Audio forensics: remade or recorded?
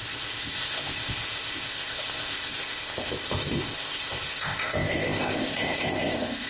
remade